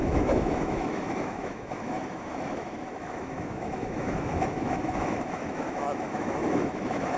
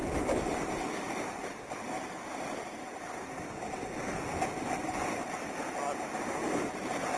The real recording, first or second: second